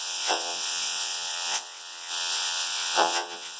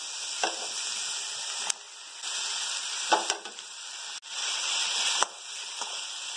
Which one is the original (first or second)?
second